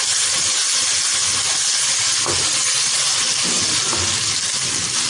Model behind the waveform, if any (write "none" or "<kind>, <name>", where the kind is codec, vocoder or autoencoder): none